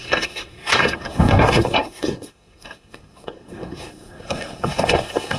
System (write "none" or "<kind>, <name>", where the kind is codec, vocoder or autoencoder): codec, SNAC